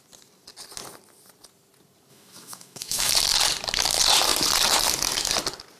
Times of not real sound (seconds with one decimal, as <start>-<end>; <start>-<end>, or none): 2.1-3.1